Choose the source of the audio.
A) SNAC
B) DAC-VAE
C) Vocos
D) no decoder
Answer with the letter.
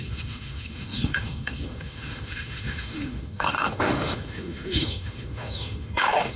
B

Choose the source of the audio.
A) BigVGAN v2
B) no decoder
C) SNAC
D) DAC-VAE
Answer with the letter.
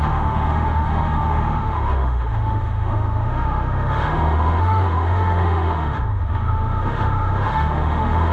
D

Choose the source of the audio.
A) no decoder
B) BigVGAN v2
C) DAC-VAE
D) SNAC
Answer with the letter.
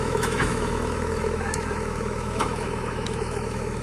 C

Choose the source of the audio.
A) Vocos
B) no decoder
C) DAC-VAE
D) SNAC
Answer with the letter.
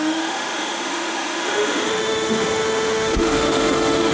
C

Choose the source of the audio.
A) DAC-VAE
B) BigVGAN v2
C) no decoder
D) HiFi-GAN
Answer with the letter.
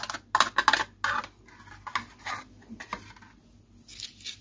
C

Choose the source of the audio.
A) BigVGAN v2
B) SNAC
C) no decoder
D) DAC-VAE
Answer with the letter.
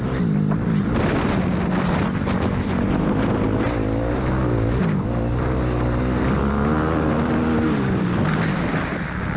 C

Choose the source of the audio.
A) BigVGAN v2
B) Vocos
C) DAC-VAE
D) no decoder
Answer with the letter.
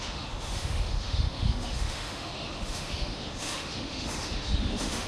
C